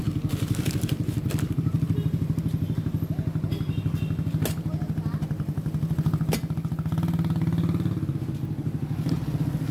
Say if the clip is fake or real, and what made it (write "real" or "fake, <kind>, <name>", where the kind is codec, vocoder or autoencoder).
real